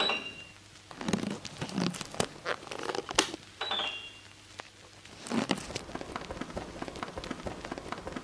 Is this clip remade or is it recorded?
recorded